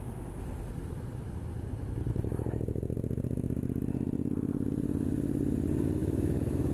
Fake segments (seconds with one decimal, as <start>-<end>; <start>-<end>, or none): 6.0-6.7